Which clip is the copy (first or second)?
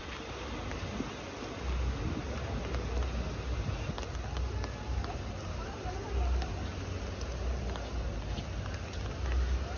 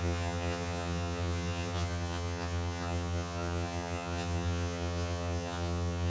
second